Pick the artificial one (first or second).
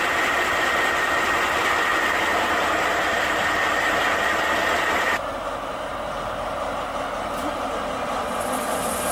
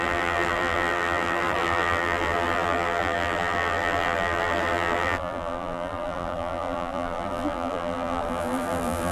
second